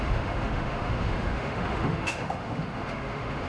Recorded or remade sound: remade